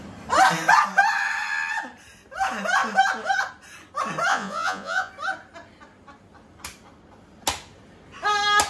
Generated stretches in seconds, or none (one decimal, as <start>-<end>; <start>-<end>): 4.3-5.1